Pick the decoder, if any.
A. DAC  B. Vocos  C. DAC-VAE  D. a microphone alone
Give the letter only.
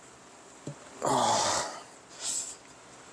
D